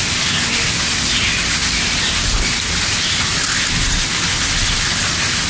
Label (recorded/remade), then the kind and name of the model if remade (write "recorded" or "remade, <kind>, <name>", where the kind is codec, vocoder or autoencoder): recorded